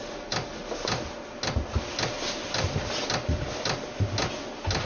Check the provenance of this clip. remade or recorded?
recorded